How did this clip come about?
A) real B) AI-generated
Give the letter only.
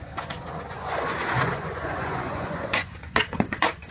B